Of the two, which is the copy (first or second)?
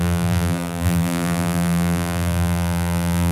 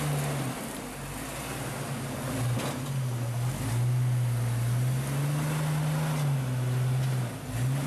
first